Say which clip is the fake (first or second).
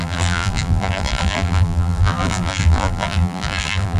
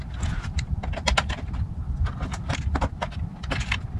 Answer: first